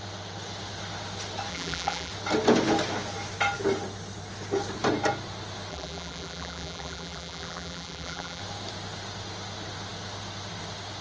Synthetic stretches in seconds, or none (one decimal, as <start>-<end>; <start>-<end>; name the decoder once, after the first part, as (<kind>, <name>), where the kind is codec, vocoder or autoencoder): 1.5-2.1 (vocoder, BigVGAN v2); 5.7-8.4